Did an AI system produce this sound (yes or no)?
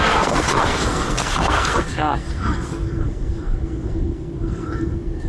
yes